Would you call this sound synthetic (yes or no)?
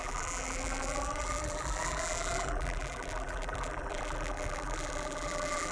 yes